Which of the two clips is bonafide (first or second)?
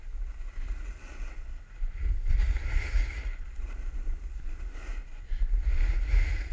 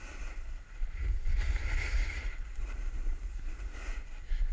first